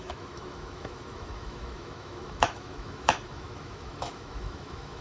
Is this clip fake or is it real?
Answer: fake